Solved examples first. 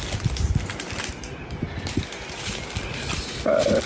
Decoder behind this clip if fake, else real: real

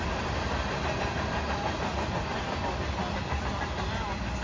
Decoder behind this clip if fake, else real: real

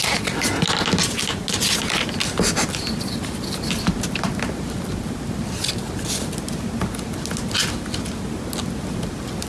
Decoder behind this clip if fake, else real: real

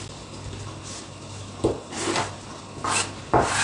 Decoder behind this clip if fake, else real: real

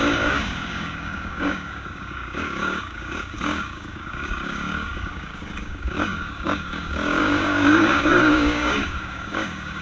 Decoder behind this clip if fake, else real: fake, codec, DAC